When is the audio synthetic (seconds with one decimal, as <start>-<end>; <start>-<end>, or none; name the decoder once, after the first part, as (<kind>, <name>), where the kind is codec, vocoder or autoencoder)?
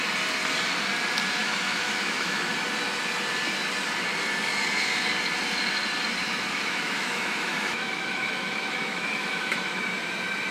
1.4-2.5 (autoencoder, DAC-VAE); 6.2-9.8